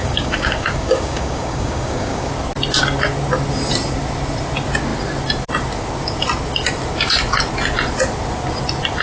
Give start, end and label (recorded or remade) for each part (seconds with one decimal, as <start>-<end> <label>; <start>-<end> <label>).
0.0-2.3 remade; 2.3-9.0 recorded